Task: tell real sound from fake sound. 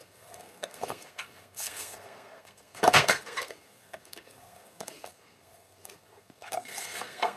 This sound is fake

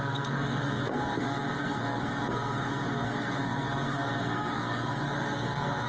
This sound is fake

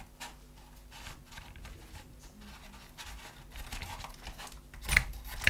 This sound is real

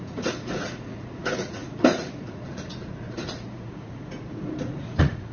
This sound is fake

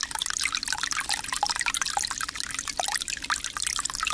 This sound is real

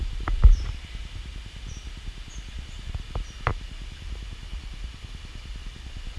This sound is real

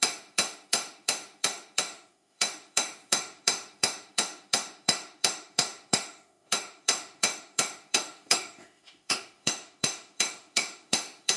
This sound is fake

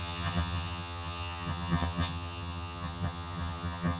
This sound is fake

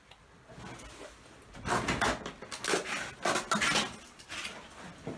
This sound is real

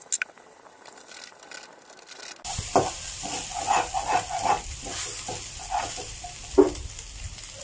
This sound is real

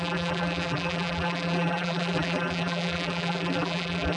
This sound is fake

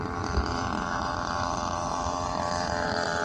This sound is fake